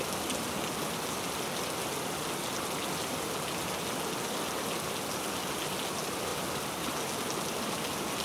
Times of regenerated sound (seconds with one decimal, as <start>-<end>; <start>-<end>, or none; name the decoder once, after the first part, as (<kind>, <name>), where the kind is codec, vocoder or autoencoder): none